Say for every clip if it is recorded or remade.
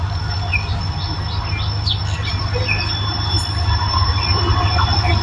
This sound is recorded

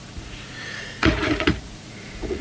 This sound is remade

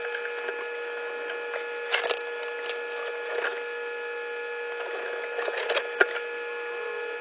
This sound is recorded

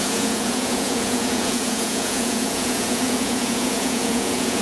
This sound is remade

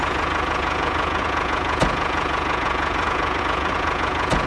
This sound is remade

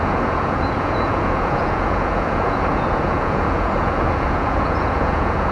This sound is remade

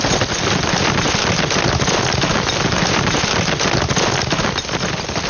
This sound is recorded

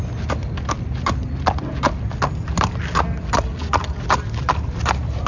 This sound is recorded